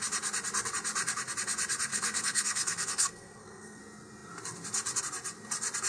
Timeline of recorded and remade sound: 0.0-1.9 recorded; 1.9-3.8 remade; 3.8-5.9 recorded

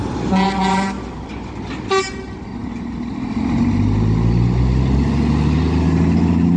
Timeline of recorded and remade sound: 0.0-6.6 recorded

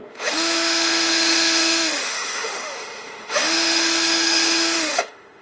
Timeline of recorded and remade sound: 0.0-5.4 remade

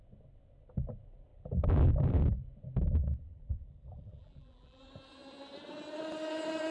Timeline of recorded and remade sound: 0.0-1.3 recorded; 1.3-2.2 remade; 2.2-3.0 recorded; 3.0-4.8 remade; 4.8-6.7 recorded

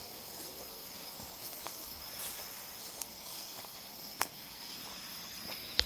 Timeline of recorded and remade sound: 0.0-2.0 remade; 2.0-2.8 recorded; 2.8-4.8 remade; 4.8-5.9 recorded